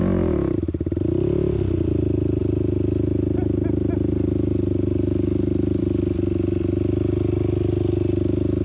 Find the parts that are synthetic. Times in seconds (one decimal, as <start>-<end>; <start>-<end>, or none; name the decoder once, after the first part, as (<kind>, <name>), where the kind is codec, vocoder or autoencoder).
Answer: none

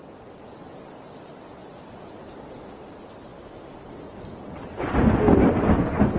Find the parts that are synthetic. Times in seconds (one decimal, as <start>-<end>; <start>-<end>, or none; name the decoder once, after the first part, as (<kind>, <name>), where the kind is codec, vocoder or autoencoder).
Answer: none